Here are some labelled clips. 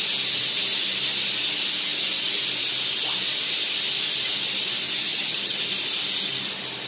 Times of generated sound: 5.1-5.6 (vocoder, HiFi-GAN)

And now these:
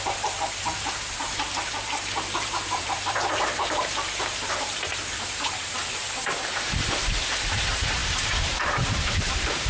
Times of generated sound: 0.0-9.7 (vocoder, BigVGAN v2)